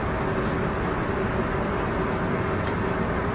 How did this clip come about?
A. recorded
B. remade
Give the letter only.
A